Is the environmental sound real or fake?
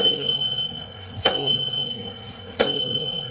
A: fake